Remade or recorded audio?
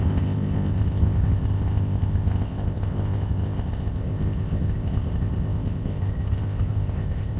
remade